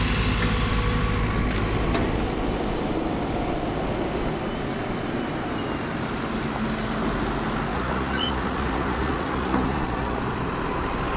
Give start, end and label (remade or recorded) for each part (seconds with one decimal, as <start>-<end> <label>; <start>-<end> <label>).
0.0-7.7 recorded; 7.7-10.2 remade; 10.2-11.2 recorded